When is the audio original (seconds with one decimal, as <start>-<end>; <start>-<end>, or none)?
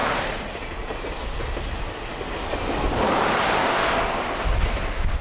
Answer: 0.0-5.2